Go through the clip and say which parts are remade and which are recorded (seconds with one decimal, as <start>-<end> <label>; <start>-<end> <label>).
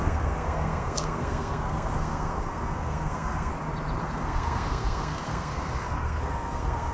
0.0-3.5 remade; 3.5-4.0 recorded; 4.0-6.9 remade